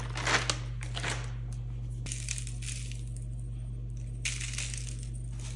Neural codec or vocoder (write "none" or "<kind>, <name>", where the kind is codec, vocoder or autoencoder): none